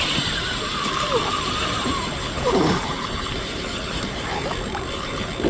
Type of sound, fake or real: fake